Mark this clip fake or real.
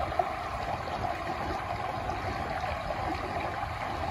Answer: real